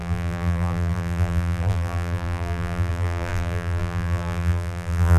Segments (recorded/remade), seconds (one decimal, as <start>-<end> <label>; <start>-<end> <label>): 0.0-5.2 remade